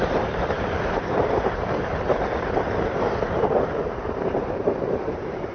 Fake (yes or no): yes